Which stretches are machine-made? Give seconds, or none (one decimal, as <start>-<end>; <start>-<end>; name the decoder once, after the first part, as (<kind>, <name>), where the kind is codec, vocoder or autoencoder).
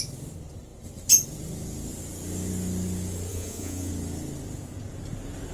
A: 3.3-3.9 (vocoder, Vocos)